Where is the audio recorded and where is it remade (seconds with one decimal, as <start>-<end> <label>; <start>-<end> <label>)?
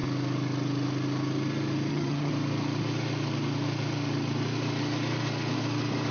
0.0-1.9 recorded; 1.9-2.3 remade; 2.3-6.1 recorded